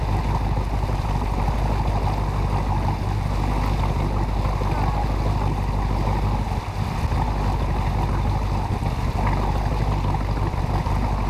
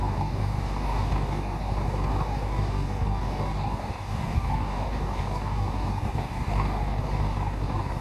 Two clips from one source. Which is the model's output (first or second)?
second